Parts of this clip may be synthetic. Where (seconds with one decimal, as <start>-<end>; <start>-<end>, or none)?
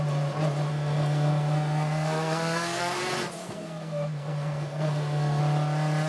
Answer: 0.7-3.0; 3.4-5.4